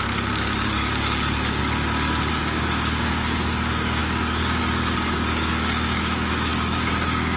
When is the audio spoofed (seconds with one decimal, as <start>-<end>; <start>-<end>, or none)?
0.0-1.6; 2.3-7.4